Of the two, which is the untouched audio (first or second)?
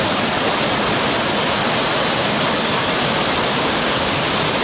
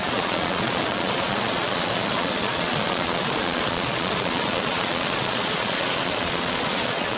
first